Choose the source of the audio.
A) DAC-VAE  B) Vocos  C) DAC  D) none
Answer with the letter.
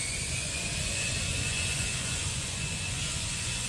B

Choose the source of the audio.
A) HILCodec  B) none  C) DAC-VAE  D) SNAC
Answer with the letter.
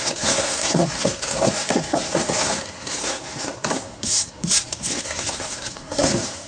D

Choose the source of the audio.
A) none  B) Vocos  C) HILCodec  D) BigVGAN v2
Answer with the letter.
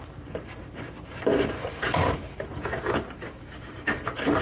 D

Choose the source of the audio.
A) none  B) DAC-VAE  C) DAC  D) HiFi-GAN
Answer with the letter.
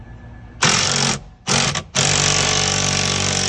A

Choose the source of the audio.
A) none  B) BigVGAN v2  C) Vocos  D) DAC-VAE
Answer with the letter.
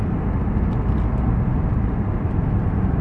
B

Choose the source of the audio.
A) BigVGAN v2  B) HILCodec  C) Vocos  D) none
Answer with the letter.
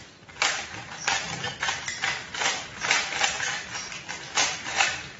A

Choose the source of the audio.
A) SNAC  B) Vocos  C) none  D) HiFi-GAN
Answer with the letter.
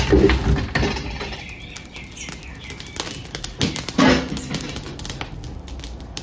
C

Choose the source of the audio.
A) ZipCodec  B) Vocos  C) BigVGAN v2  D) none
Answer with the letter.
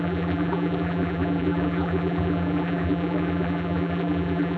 C